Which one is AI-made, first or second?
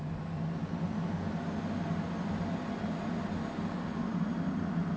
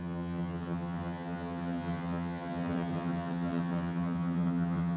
second